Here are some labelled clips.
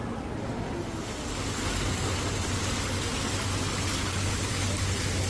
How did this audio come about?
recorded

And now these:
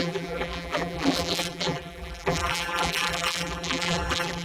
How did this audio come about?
remade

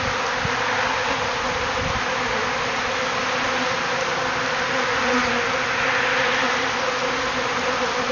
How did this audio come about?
recorded